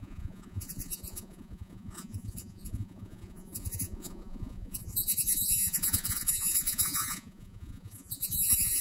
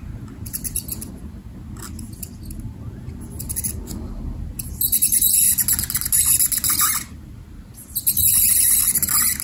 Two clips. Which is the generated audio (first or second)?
first